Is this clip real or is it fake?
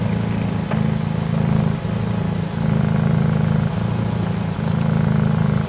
real